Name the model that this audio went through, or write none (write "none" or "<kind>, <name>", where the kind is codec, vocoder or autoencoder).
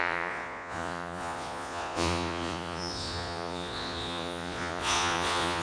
vocoder, Vocos